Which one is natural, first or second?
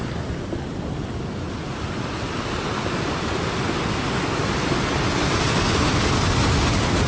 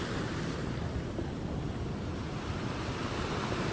first